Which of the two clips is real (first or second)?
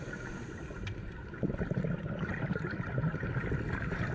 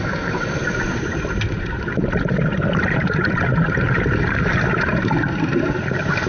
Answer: first